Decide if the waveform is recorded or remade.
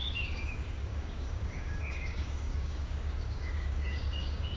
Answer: remade